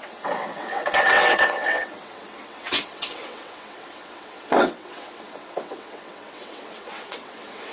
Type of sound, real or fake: fake